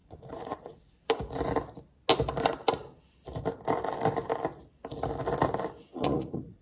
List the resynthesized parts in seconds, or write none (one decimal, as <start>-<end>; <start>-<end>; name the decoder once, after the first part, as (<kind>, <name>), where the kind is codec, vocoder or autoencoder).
0.0-1.0 (vocoder, Vocos); 5.9-6.6